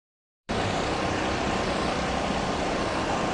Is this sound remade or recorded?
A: remade